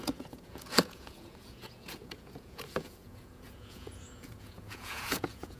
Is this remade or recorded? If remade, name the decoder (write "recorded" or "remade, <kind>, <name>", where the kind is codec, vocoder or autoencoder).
remade, vocoder, Vocos